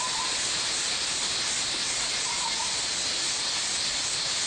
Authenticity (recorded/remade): recorded